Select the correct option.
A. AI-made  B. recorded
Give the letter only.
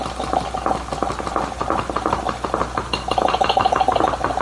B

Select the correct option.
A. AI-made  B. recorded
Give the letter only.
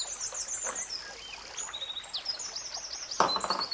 B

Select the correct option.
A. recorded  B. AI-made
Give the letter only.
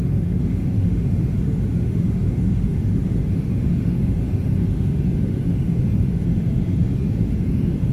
B